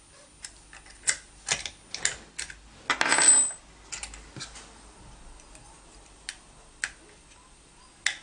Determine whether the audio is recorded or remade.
recorded